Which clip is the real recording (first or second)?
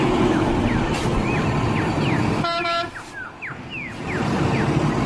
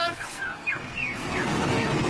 first